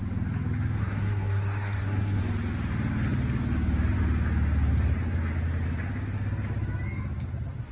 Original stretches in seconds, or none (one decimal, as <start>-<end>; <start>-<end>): 0.0-0.8; 2.2-7.7